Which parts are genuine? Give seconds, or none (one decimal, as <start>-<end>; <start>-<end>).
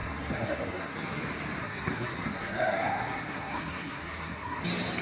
1.2-1.6; 4.6-5.0